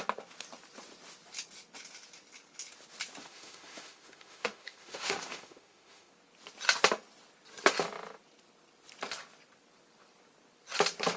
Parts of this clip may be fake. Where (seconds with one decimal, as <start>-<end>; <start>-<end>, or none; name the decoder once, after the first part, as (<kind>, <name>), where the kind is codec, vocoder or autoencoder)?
3.2-6.1 (autoencoder, DAC-VAE)